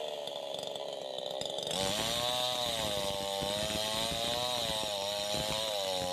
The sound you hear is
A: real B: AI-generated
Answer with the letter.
A